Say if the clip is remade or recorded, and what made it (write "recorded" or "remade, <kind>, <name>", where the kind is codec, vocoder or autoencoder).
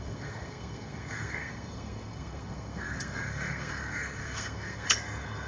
remade, codec, SNAC